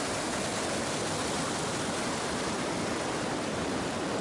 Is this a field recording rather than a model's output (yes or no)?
yes